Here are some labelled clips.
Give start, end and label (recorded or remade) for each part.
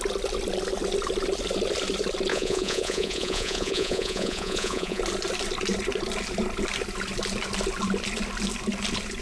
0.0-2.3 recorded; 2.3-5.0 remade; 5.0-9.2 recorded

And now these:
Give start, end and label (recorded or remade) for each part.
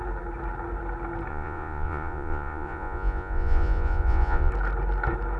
0.0-1.3 recorded; 1.3-4.5 remade; 4.5-5.4 recorded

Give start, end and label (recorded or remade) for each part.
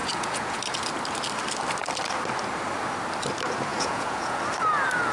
0.0-0.6 remade; 0.6-3.7 recorded; 3.7-4.4 remade; 4.4-5.1 recorded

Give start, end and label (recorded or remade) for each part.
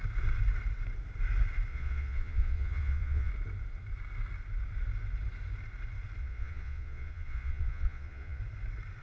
0.0-1.7 recorded; 1.7-3.3 remade; 3.3-6.2 recorded; 6.2-8.4 remade; 8.4-9.0 recorded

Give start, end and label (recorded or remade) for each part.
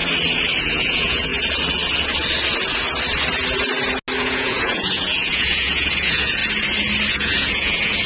0.0-0.6 recorded; 0.6-1.3 remade; 1.3-4.2 recorded; 4.2-6.4 remade; 6.4-7.1 recorded; 7.1-8.1 remade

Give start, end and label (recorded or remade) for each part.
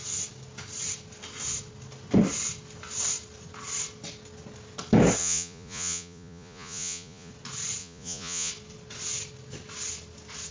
0.0-5.2 recorded; 5.2-7.3 remade; 7.3-7.8 recorded; 7.8-8.5 remade; 8.5-10.5 recorded